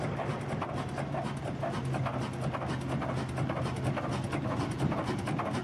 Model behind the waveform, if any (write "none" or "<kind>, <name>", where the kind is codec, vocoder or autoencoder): none